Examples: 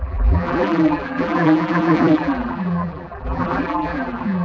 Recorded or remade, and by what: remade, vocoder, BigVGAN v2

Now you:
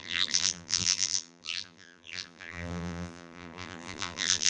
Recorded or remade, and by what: remade, vocoder, BigVGAN v2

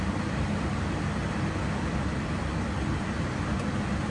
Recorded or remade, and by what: recorded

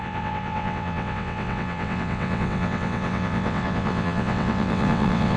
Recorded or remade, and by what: remade, vocoder, WaveNeXt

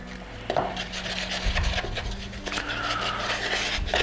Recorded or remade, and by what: recorded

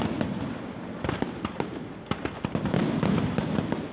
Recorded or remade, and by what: recorded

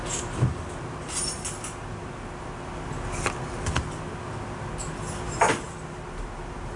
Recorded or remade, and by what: recorded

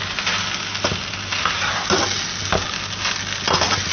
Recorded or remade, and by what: recorded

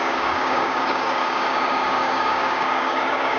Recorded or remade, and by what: remade, codec, DAC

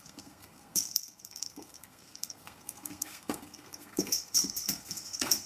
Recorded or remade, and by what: remade, codec, SNAC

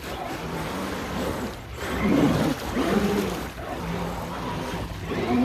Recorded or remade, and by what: recorded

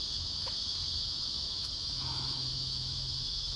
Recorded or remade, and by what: remade, autoencoder, DAC-VAE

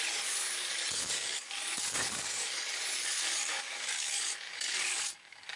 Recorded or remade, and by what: remade, codec, DAC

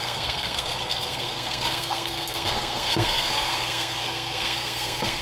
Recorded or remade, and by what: remade, codec, SNAC